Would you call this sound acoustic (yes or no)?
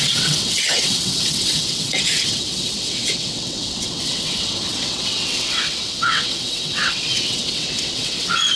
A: no